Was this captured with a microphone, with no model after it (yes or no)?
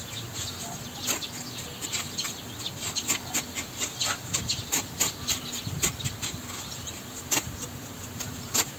yes